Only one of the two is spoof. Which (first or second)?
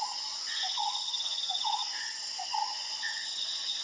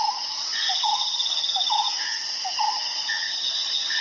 first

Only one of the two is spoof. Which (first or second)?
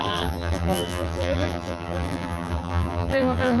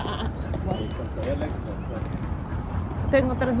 first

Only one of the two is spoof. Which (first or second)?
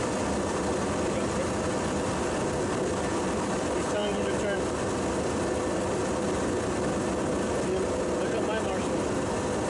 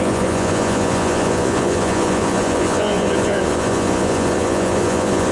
second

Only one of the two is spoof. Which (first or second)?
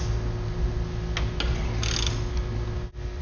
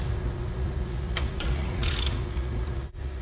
second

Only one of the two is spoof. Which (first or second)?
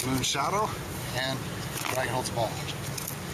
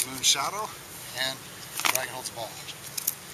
first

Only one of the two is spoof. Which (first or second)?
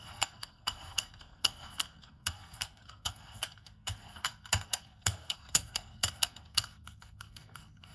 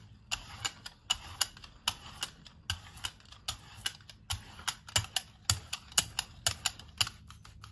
first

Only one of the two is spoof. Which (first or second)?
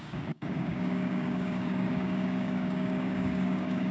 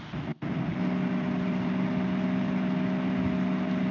first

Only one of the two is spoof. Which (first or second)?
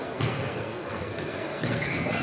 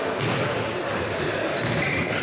first